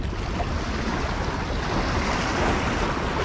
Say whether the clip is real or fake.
real